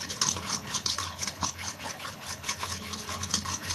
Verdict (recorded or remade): remade